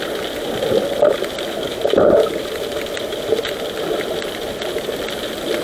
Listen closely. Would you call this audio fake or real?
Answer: real